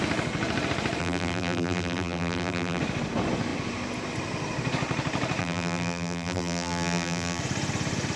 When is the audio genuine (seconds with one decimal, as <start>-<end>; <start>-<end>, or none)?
0.0-1.0; 2.8-5.4; 7.4-8.2